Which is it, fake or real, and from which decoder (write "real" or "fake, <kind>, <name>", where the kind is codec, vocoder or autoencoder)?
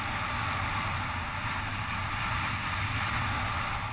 real